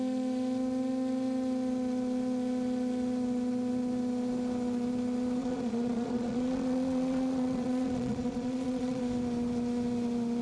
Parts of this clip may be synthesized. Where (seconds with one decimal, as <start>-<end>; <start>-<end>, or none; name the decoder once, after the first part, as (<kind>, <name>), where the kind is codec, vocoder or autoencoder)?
5.4-9.0 (vocoder, Vocos)